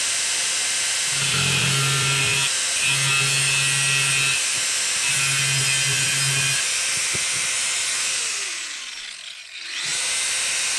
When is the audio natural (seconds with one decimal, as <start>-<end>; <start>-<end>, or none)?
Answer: 0.0-10.8